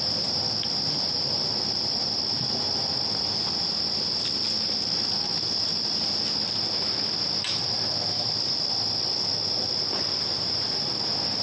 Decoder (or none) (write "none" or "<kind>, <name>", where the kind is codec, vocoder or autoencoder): none